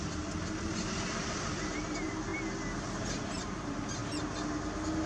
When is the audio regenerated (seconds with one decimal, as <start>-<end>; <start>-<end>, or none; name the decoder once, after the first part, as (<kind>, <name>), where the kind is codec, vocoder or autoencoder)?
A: 0.0-2.3 (vocoder, BigVGAN v2); 2.8-4.0